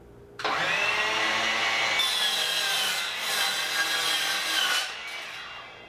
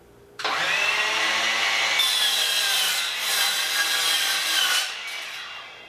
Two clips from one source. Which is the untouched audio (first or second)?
first